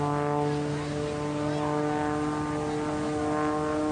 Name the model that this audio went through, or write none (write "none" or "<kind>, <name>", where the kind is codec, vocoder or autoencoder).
none